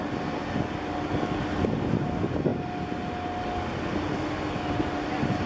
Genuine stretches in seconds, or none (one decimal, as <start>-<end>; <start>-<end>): 0.0-5.5